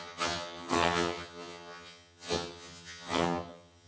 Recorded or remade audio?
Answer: remade